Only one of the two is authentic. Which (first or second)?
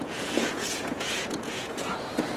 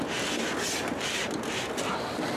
second